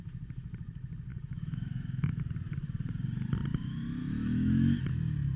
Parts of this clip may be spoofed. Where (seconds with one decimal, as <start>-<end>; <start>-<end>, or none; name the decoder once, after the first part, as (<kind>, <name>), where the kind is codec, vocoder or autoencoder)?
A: 1.1-2.2 (autoencoder, DAC-VAE); 4.0-4.8